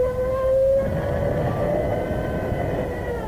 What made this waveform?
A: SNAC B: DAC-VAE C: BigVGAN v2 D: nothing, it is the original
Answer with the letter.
D